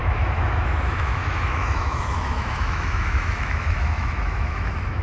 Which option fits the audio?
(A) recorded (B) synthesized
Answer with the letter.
B